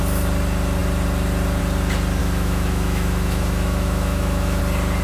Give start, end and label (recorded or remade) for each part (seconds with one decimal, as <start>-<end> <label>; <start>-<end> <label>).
0.0-2.2 recorded; 2.2-4.6 remade; 4.6-5.0 recorded